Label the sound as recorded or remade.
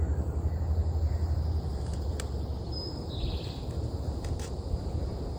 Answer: recorded